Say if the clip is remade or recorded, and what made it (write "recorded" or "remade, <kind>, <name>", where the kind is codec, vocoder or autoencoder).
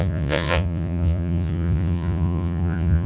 remade, vocoder, Vocos